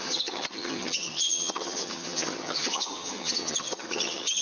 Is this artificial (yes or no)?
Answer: yes